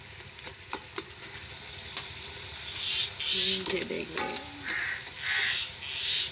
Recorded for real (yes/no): yes